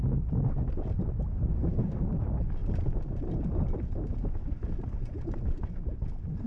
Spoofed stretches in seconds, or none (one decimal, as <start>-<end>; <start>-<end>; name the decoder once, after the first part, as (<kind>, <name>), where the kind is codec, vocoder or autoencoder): 1.5-2.1 (codec, SNAC)